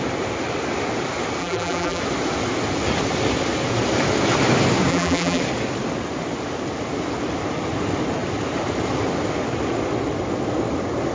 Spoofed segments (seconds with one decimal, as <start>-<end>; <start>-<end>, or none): 1.4-2.0; 4.9-5.4